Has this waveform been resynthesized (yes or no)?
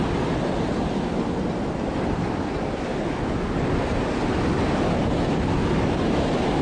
no